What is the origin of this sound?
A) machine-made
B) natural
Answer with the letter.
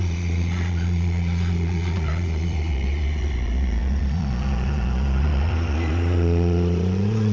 A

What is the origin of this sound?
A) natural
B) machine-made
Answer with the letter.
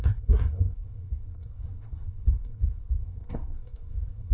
B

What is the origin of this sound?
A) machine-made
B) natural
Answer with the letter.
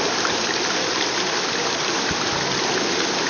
B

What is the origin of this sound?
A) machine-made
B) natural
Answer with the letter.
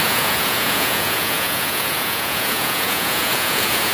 A